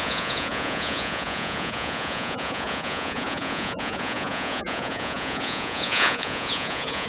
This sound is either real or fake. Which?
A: fake